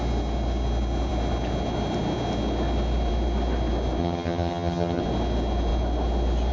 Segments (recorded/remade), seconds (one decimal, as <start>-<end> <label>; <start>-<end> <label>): 0.0-4.0 recorded; 4.0-5.0 remade; 5.0-6.5 recorded